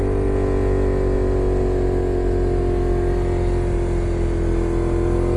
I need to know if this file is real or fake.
real